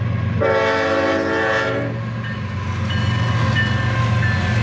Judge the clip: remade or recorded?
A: recorded